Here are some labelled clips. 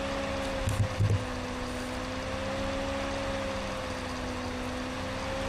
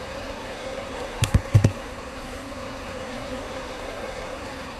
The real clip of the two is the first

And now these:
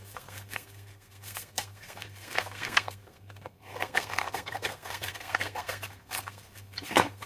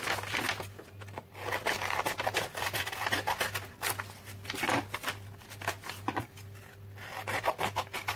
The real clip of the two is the second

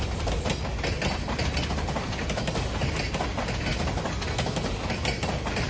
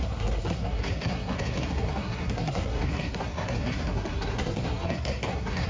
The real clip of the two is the first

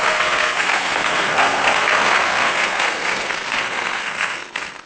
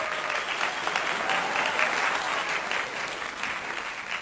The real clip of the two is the second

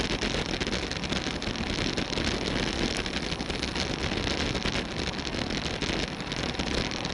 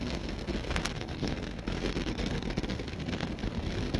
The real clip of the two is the first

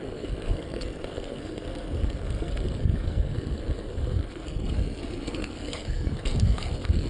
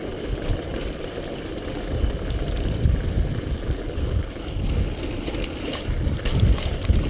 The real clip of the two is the second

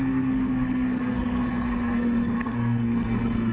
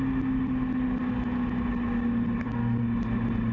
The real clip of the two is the second